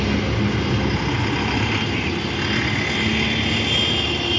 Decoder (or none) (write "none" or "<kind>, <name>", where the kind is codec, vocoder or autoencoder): none